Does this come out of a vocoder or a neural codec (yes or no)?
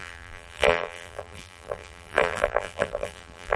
yes